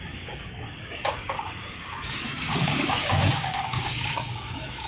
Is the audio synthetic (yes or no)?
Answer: yes